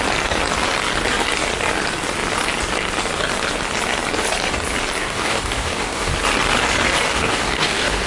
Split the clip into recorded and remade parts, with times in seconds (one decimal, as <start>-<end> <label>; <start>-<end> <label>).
0.0-5.0 recorded; 5.0-6.1 remade; 6.1-7.1 recorded; 7.1-8.1 remade